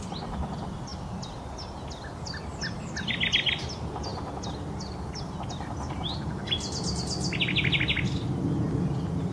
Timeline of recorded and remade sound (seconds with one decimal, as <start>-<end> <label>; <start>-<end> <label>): 0.0-9.3 recorded